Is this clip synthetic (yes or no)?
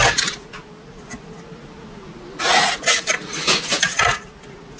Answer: no